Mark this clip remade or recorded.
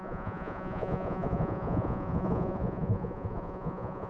remade